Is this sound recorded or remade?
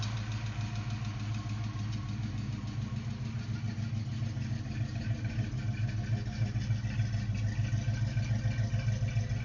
recorded